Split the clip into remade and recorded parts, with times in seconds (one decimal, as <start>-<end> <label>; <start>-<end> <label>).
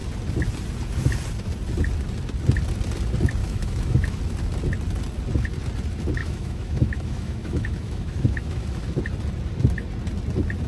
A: 0.0-3.4 recorded; 3.4-4.2 remade; 4.2-6.2 recorded; 6.2-9.0 remade; 9.0-10.7 recorded